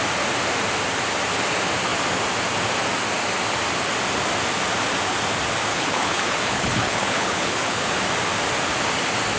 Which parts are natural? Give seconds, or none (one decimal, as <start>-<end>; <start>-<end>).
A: 0.0-5.7; 7.9-9.4